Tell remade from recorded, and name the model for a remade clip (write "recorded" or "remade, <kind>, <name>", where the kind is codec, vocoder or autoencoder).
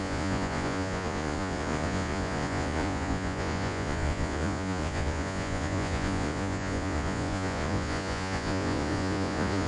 remade, vocoder, Vocos